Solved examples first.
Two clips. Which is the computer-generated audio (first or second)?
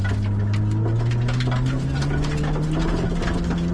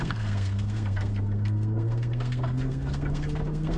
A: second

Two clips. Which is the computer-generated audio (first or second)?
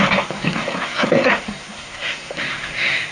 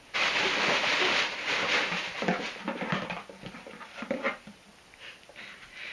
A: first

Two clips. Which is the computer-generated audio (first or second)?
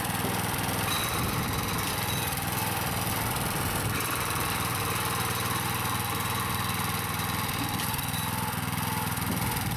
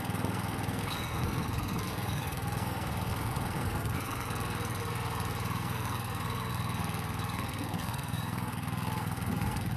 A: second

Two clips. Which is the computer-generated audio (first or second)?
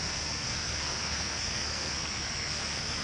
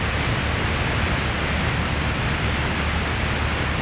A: first